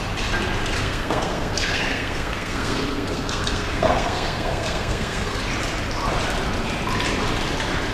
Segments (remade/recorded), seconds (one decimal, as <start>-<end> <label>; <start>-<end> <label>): 0.0-0.8 recorded; 0.8-5.4 remade; 5.4-7.9 recorded